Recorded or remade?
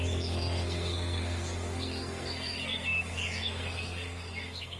remade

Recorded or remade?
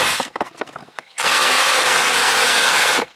remade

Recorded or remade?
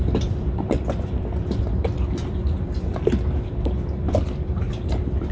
remade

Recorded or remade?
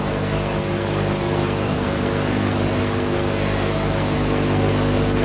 remade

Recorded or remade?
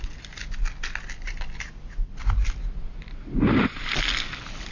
recorded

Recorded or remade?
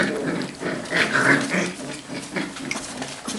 remade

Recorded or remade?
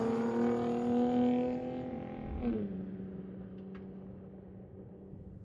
recorded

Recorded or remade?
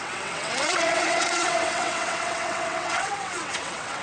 remade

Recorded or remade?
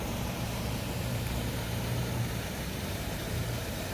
remade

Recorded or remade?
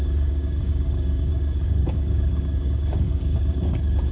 remade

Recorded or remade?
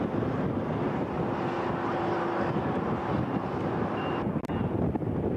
recorded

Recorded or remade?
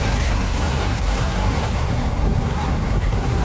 remade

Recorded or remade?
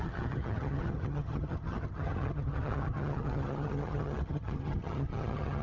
remade